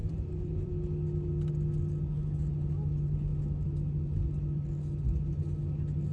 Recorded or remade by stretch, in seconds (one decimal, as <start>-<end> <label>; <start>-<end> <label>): 0.0-0.7 remade; 0.7-6.1 recorded